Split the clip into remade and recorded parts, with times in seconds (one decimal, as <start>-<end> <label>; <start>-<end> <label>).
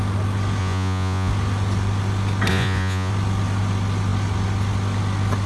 0.0-0.6 recorded; 0.6-1.3 remade; 1.3-2.5 recorded; 2.5-3.1 remade; 3.1-5.5 recorded